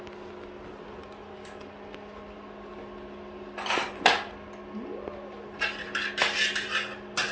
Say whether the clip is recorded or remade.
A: recorded